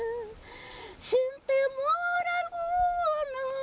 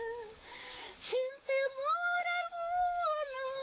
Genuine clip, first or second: first